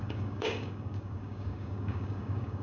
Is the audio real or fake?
fake